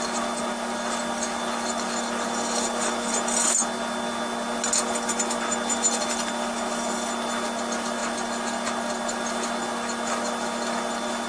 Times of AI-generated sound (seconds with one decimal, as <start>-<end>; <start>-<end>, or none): none